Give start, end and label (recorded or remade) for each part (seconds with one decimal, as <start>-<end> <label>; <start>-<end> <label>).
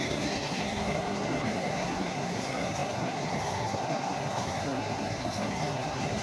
0.0-6.2 remade